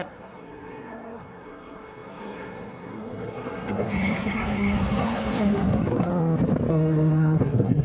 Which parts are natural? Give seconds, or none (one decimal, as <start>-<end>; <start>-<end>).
6.1-6.7